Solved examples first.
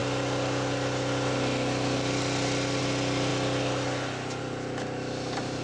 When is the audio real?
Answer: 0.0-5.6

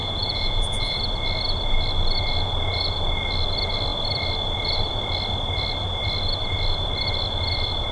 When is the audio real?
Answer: 1.0-7.9

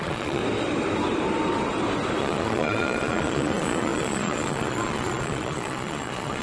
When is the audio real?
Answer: 0.4-2.2